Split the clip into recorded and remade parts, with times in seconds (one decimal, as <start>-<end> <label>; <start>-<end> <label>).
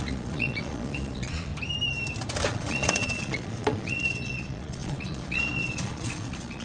0.0-1.5 remade; 1.5-2.5 recorded; 2.5-6.6 remade